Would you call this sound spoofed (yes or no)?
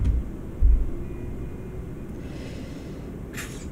no